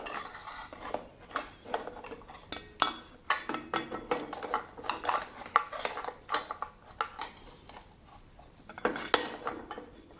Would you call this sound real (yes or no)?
yes